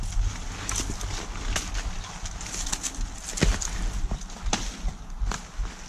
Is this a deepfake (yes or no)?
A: no